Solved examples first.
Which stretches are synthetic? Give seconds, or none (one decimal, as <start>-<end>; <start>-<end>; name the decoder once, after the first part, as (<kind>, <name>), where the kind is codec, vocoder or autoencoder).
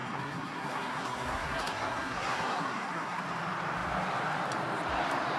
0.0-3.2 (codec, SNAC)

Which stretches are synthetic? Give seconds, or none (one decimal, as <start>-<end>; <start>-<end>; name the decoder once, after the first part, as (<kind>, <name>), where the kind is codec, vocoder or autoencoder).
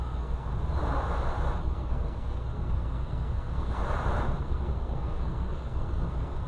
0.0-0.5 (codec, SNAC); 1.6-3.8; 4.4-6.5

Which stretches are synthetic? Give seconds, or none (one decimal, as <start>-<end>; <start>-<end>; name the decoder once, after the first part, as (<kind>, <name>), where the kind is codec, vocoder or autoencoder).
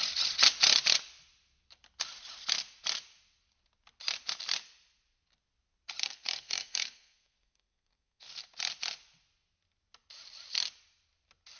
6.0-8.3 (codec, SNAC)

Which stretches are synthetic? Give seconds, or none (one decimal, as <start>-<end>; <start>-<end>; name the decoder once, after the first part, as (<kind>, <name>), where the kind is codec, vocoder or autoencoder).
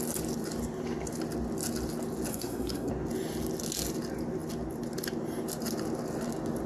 2.3-2.9 (codec, SNAC)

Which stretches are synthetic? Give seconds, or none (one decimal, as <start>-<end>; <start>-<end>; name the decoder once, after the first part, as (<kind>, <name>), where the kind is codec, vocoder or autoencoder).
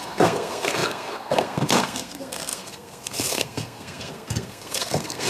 0.0-5.3 (codec, SNAC)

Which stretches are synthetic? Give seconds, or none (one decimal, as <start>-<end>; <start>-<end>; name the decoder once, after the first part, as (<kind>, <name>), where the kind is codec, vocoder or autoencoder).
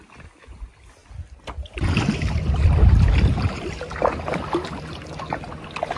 none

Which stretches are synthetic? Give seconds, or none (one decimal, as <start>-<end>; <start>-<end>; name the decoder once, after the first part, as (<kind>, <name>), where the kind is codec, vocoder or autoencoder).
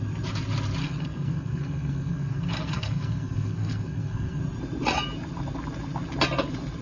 0.8-4.4 (codec, SNAC)